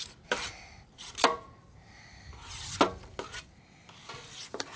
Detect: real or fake real